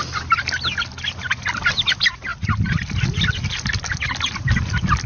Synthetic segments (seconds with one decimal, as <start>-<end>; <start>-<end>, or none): none